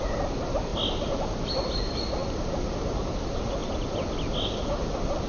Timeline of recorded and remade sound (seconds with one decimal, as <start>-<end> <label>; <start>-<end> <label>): 0.0-5.3 recorded